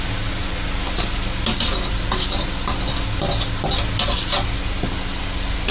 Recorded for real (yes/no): yes